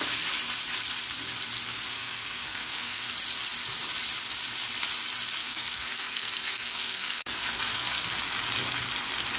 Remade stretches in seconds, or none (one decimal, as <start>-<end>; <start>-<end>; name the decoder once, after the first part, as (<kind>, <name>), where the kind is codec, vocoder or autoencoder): 1.9-3.1 (codec, SNAC); 5.4-8.2